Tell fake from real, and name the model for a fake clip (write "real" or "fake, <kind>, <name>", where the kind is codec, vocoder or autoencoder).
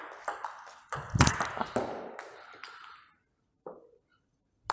real